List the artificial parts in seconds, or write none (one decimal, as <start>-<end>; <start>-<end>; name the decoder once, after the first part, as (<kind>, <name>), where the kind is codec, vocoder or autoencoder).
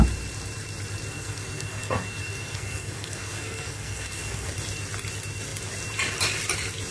1.1-4.5 (codec, SNAC)